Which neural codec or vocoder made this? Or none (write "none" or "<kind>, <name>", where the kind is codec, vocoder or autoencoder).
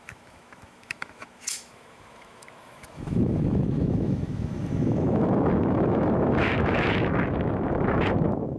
autoencoder, DAC-VAE